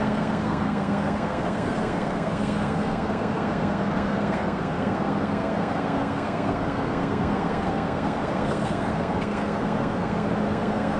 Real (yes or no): no